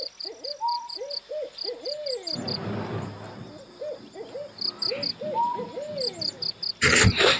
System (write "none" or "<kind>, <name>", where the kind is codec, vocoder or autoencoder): none